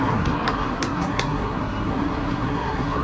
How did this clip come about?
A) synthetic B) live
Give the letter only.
A